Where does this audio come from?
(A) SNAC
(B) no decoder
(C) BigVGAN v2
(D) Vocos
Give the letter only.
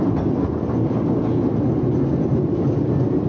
B